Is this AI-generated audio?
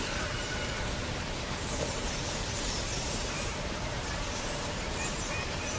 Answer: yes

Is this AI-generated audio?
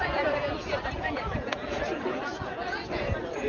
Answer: yes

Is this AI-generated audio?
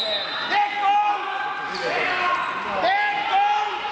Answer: no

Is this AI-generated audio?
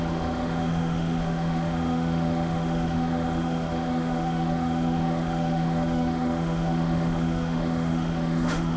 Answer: yes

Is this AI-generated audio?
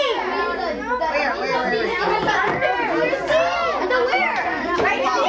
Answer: no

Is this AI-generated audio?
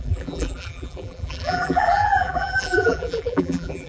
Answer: yes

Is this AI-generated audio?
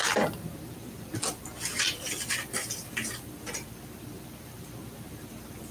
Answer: yes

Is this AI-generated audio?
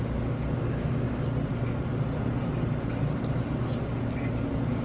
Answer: no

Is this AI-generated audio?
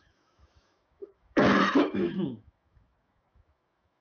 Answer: yes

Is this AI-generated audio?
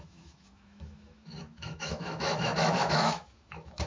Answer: yes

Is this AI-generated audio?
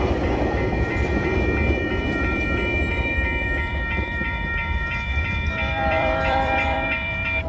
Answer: yes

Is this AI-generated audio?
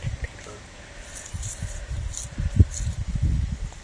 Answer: no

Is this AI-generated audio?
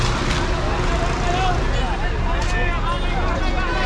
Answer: no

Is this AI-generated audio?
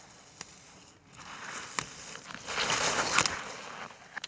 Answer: no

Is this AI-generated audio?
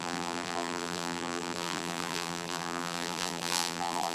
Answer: yes